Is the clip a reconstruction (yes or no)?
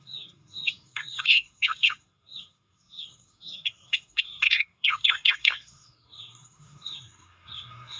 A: yes